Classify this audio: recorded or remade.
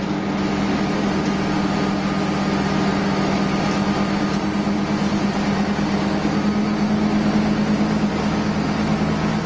recorded